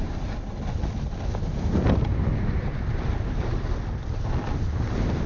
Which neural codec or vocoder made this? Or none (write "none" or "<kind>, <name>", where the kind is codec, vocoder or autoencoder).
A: none